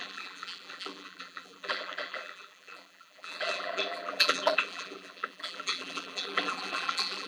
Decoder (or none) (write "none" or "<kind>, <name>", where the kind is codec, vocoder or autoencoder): vocoder, BigVGAN v2